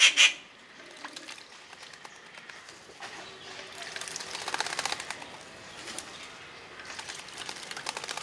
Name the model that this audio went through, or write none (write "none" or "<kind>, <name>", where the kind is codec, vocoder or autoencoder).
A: none